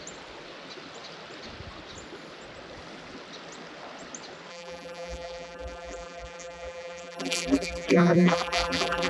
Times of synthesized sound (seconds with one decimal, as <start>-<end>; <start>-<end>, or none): 4.5-9.1